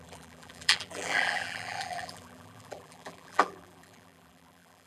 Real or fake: fake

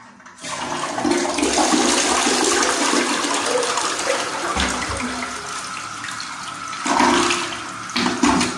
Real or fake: real